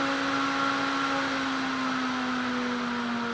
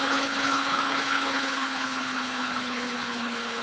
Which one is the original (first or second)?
first